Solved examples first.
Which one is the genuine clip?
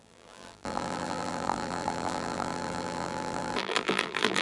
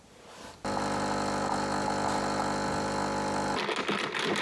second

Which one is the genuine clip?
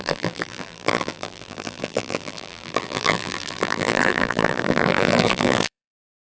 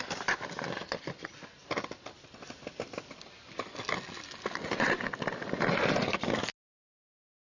second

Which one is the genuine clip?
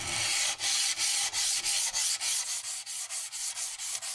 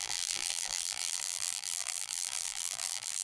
first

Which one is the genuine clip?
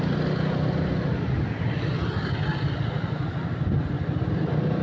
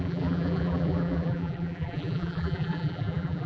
first